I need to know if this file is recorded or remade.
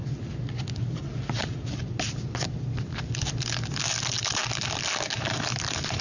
recorded